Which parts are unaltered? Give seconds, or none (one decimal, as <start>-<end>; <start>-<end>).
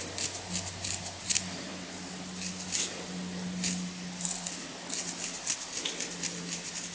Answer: 0.0-6.9